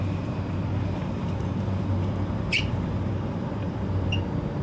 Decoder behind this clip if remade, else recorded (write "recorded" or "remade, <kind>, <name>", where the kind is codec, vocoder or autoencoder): remade, vocoder, BigVGAN v2